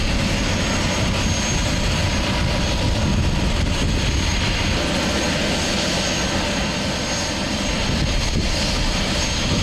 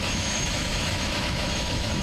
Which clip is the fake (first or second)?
second